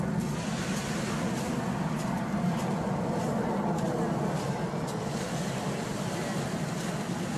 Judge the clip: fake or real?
real